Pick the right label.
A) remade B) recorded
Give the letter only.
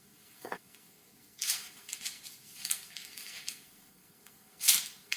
A